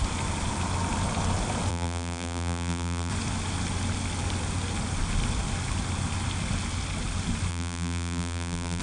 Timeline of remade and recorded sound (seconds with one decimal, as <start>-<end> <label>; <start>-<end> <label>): 0.0-1.7 recorded; 1.7-3.1 remade; 3.1-7.5 recorded; 7.5-8.8 remade